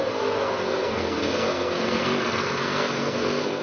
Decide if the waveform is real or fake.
fake